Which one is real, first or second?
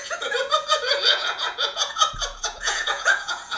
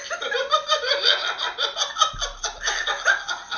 second